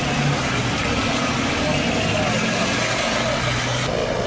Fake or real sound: real